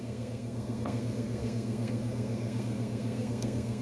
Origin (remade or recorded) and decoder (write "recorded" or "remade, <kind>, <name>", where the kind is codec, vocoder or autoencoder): remade, codec, SNAC